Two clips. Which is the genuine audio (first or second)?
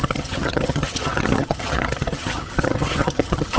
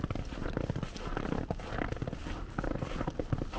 second